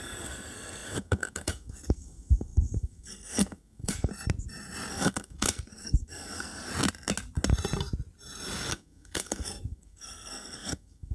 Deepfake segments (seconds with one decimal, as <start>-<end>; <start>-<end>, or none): 0.0-4.1; 4.9-6.7; 8.7-11.1